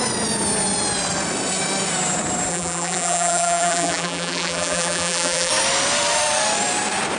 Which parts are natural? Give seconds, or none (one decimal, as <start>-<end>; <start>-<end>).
0.0-2.5; 5.5-7.2

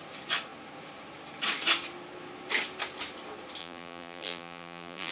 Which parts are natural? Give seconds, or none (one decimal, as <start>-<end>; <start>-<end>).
0.0-3.6

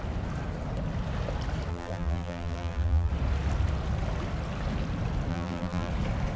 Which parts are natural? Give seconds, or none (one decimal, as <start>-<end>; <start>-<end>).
0.0-1.7; 3.1-5.3; 5.9-6.4

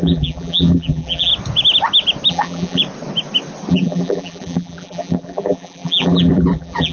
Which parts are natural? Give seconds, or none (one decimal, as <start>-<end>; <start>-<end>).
1.3-2.3; 2.8-3.7

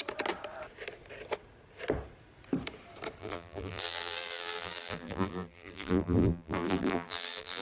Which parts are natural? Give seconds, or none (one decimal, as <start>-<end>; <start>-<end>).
0.0-3.2

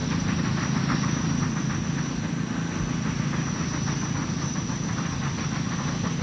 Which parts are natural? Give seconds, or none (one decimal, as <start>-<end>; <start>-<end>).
0.5-6.2

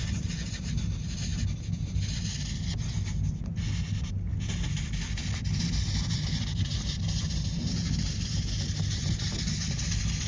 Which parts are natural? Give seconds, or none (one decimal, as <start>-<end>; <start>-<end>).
0.0-10.3

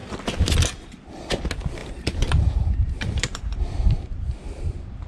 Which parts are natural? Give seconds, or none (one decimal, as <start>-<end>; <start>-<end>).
0.0-1.8